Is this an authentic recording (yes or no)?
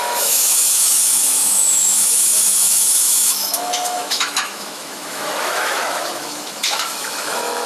no